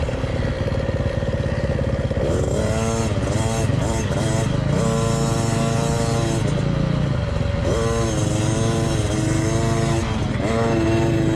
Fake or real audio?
real